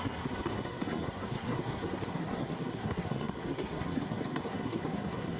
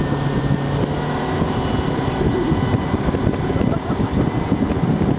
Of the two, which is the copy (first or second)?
first